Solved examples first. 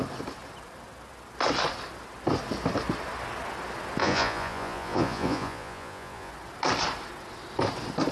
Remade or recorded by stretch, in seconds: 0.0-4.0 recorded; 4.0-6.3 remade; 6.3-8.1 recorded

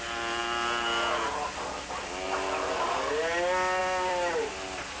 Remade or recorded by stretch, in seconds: 0.0-3.8 recorded; 3.8-4.5 remade; 4.5-5.0 recorded

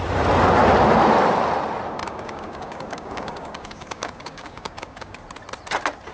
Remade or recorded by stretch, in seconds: 0.0-2.0 recorded; 2.0-5.2 remade; 5.2-6.1 recorded

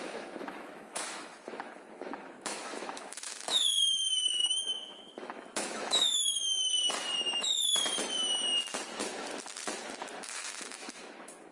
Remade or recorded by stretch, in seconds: 0.0-6.7 remade; 6.7-10.2 recorded; 10.2-11.5 remade

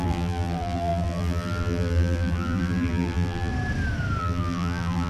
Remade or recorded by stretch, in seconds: 0.0-3.5 remade; 3.5-4.2 recorded; 4.2-5.1 remade

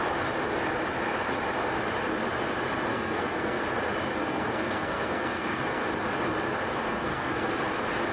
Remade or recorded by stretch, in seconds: 0.0-2.9 recorded; 2.9-3.6 remade; 3.6-4.2 recorded; 4.2-5.9 remade; 5.9-6.7 recorded; 6.7-7.6 remade; 7.6-8.1 recorded

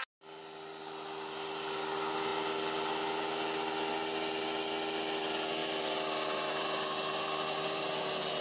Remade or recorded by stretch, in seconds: 0.0-8.4 recorded

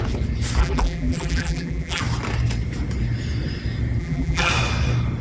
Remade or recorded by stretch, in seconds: 0.0-0.6 recorded; 0.6-2.0 remade; 2.0-4.0 recorded; 4.0-4.5 remade; 4.5-5.2 recorded